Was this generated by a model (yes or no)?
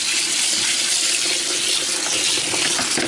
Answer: no